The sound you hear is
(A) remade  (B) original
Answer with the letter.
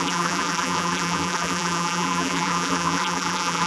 A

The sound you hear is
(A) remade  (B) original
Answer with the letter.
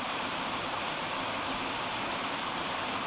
A